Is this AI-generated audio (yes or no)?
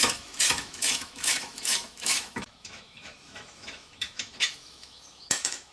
yes